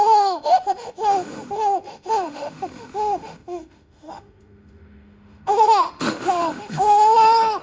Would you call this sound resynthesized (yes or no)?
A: yes